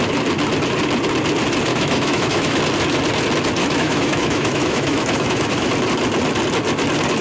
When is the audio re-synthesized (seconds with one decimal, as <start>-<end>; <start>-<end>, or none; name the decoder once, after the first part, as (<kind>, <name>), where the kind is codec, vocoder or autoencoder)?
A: 1.7-2.6 (autoencoder, DAC-VAE); 3.6-5.7